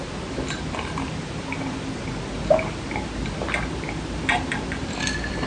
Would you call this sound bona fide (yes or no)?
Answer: yes